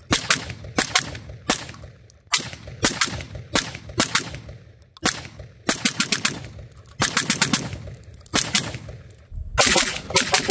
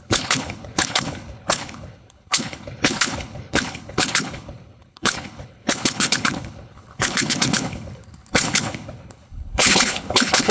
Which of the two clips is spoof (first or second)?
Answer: second